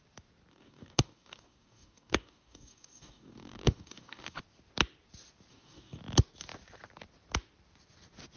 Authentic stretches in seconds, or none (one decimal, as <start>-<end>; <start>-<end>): 0.0-0.5; 4.4-5.5; 6.0-8.4